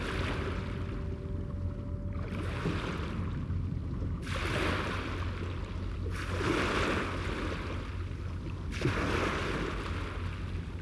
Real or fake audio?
real